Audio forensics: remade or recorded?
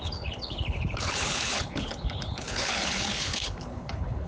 remade